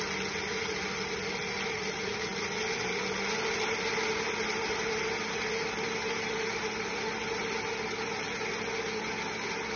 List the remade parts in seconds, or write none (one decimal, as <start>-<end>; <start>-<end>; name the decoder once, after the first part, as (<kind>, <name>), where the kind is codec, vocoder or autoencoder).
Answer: none